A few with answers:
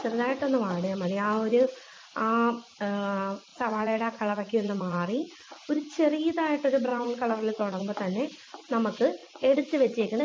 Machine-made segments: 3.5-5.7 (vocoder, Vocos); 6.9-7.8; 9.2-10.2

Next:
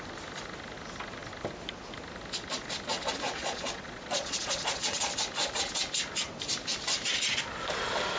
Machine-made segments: 3.4-5.1 (vocoder, Vocos)